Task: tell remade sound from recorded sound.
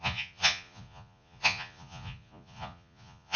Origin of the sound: remade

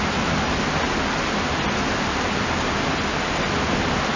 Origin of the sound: recorded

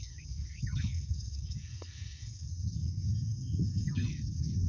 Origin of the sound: remade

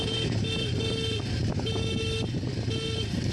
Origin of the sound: recorded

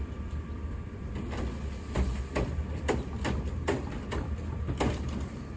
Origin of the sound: remade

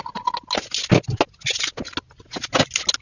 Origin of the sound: recorded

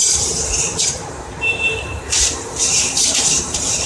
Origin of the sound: remade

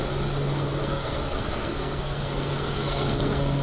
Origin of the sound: remade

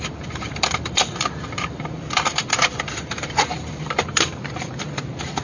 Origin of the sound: remade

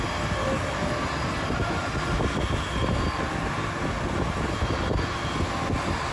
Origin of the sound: recorded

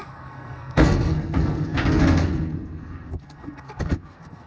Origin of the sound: remade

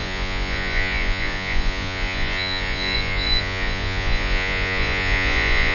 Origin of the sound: remade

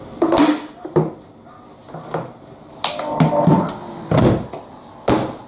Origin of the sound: recorded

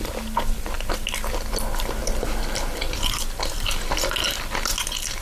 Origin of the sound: recorded